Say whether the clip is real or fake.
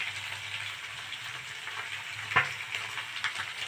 real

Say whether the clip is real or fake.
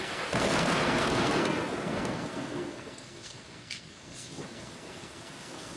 fake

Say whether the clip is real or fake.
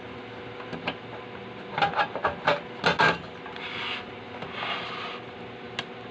real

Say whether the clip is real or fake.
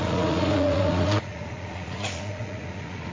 fake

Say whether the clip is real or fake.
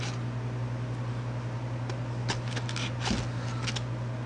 real